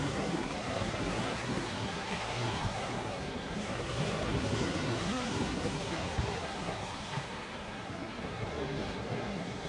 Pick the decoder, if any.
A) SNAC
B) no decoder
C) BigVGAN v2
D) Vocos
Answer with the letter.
A